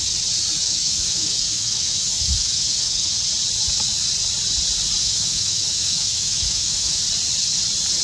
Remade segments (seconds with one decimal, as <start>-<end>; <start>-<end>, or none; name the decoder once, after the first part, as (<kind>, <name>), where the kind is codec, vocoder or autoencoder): 0.6-3.2 (autoencoder, DAC-VAE); 5.0-7.0